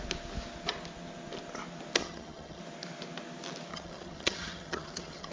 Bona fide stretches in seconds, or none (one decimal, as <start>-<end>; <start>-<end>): 0.0-2.0; 2.6-3.7